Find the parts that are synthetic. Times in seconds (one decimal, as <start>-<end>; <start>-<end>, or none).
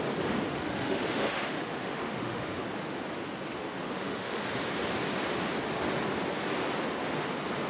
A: 0.5-2.6; 3.8-4.4